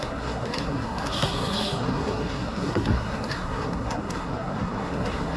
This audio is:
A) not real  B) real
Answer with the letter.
A